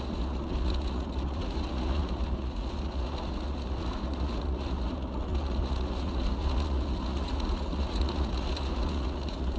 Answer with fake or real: fake